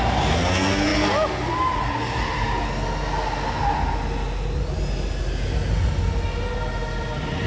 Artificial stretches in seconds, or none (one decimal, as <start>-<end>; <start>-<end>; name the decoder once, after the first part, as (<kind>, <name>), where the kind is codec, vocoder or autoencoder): none